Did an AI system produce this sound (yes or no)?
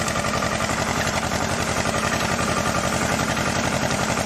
yes